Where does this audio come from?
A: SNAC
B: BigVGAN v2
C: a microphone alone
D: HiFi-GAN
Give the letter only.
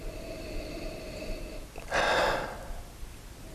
C